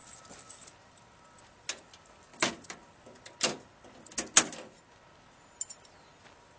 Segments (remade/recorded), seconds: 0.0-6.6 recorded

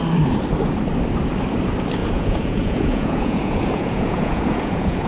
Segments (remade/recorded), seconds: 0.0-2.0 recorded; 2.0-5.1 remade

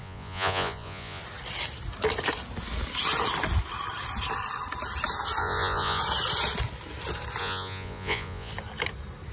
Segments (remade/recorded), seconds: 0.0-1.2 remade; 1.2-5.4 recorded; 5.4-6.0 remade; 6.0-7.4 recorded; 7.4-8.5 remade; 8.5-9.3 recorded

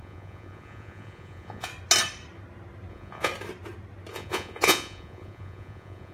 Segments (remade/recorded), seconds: 0.0-1.7 remade; 1.7-2.9 recorded; 2.9-3.3 remade; 3.3-4.1 recorded; 4.1-6.1 remade

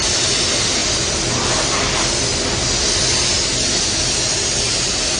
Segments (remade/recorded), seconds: 0.0-5.2 recorded